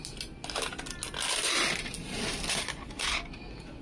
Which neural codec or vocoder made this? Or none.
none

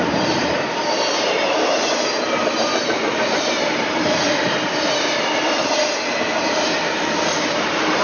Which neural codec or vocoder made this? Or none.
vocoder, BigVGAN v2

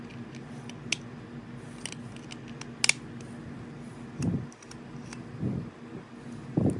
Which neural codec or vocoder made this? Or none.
none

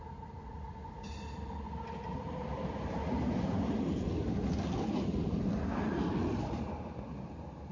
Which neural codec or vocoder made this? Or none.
none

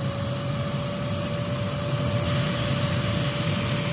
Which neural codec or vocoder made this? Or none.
none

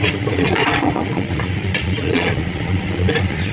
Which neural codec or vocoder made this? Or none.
vocoder, Vocos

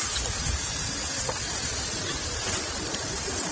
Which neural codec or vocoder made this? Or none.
vocoder, BigVGAN v2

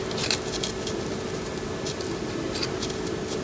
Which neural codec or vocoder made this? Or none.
none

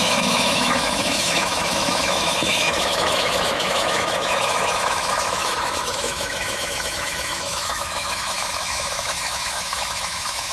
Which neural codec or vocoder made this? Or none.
autoencoder, DAC-VAE